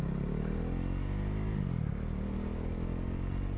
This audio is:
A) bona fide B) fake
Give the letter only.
A